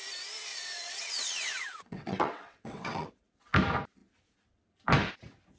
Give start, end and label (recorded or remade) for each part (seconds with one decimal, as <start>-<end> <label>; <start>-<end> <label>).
0.0-0.5 recorded; 0.5-3.1 remade; 3.1-5.6 recorded